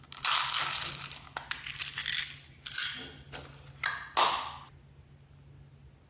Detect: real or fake real